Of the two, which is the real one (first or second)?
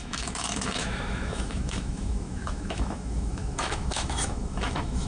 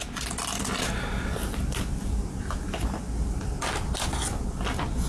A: second